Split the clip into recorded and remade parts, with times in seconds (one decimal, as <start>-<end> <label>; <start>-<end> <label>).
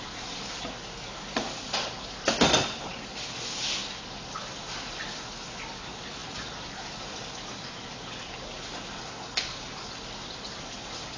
0.0-11.2 recorded